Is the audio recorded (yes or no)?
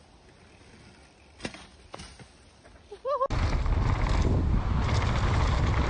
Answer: yes